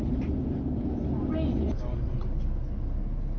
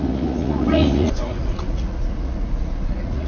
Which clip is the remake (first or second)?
second